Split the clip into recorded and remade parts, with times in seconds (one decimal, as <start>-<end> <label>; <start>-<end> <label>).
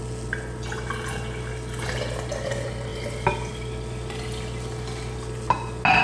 0.0-6.0 recorded